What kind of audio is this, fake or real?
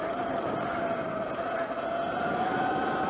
real